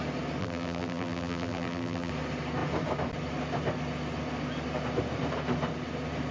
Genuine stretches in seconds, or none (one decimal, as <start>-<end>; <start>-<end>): 0.0-0.4; 2.1-6.3